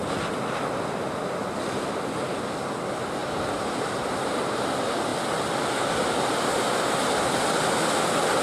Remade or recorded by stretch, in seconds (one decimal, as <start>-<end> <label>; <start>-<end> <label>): 0.0-3.2 recorded; 3.2-4.5 remade; 4.5-8.4 recorded